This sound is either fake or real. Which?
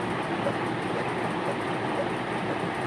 real